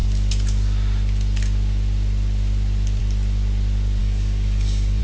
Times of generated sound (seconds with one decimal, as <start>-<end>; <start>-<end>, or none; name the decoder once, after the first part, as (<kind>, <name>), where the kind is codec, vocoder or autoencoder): 4.0-5.0 (codec, DAC)